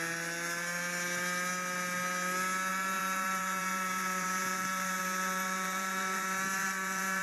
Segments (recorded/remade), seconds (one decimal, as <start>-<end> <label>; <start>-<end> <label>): 0.0-2.7 recorded; 2.7-7.2 remade